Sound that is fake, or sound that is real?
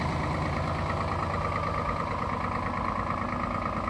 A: real